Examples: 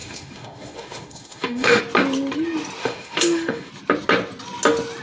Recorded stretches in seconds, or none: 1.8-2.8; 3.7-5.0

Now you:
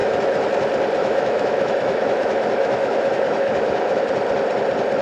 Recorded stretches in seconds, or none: 0.5-1.0; 4.0-5.0

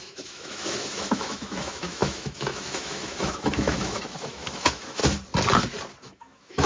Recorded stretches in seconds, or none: 5.0-6.0

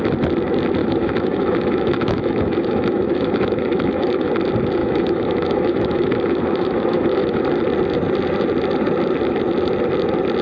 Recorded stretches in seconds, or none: 0.0-0.8; 4.3-4.8; 7.4-10.4

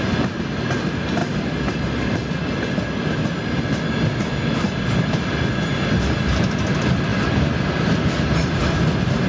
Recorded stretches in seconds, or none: 0.0-9.3